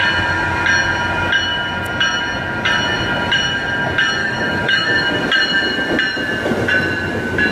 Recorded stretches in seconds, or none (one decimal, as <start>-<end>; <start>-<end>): 0.0-4.2; 4.9-7.5